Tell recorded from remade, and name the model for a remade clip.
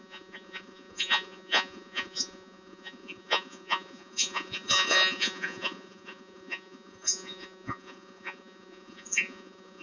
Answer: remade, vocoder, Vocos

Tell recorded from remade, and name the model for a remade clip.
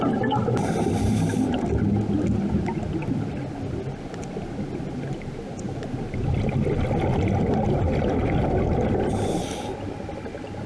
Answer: recorded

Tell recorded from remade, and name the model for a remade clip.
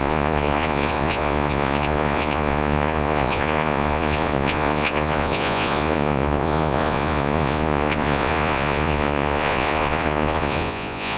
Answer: remade, vocoder, Vocos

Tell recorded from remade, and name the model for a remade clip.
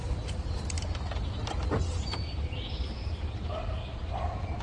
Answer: recorded